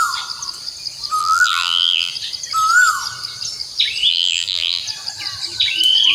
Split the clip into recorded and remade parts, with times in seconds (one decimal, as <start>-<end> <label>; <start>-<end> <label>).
0.0-1.2 recorded; 1.2-2.1 remade; 2.1-4.1 recorded; 4.1-4.8 remade; 4.8-6.1 recorded